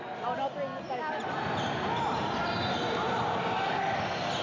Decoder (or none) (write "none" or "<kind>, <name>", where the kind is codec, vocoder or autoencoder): none